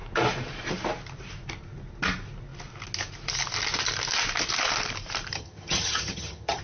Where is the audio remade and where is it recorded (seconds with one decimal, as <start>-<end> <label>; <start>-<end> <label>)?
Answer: 0.0-5.3 recorded; 5.3-6.6 remade